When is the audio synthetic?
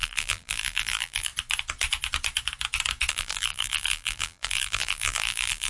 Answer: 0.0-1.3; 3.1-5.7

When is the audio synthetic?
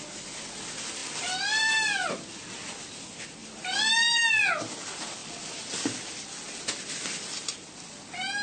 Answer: 1.0-2.8; 3.4-4.2; 5.2-6.6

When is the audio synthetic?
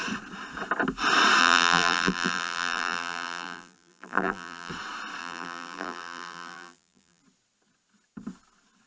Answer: 1.4-4.7; 5.2-7.2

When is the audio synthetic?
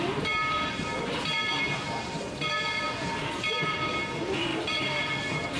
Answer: 0.5-3.9; 4.5-5.6